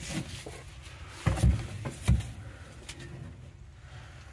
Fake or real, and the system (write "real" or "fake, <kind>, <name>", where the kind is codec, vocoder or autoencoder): real